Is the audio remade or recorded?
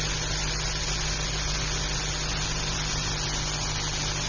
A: recorded